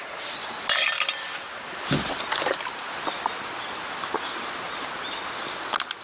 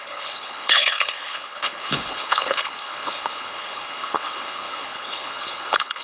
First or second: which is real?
first